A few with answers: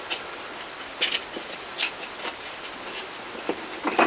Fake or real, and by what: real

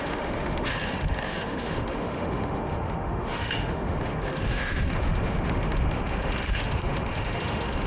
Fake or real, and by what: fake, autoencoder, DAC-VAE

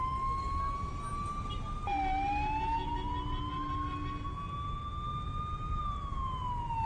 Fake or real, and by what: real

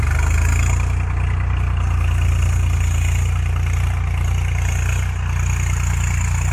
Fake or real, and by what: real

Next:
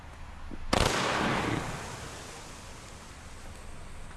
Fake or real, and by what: real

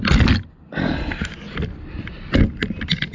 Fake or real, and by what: real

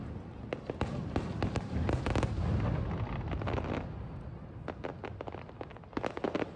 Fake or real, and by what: real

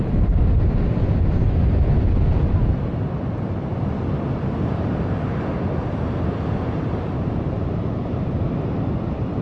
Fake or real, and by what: real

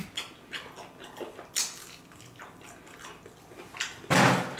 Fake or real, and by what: real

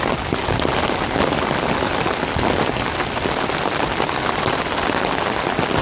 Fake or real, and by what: real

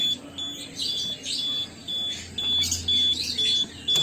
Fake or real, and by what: real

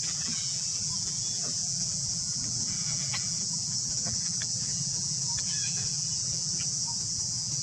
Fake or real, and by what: fake, vocoder, BigVGAN v2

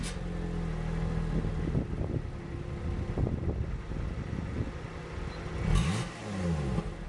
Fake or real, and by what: real